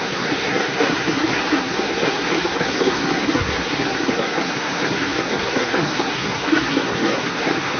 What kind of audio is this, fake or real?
fake